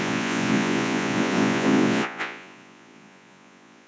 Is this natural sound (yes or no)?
no